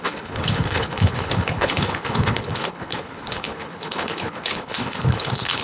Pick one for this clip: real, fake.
fake